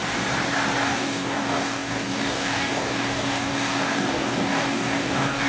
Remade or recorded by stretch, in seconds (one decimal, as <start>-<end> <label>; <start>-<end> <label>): 0.0-0.8 recorded; 0.8-5.5 remade